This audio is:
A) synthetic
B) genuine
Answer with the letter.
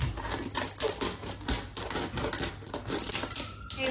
B